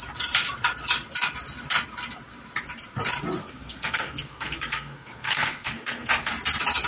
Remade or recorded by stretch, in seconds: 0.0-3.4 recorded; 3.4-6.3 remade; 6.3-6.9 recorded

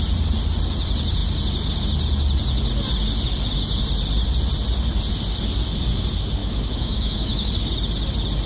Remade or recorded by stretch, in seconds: 0.0-6.4 recorded; 6.4-7.5 remade; 7.5-8.5 recorded

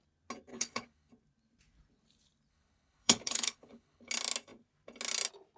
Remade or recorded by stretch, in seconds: 0.0-0.5 recorded; 0.5-1.1 remade; 1.1-2.5 recorded; 2.5-4.1 remade; 4.1-5.6 recorded